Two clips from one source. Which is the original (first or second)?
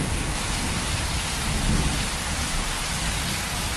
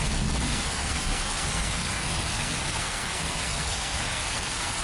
first